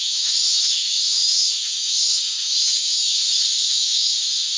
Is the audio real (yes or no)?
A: no